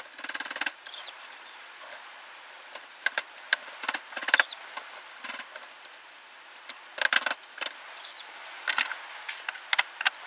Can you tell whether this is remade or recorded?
remade